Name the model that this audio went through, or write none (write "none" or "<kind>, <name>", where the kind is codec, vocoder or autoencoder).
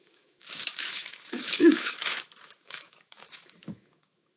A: autoencoder, DAC-VAE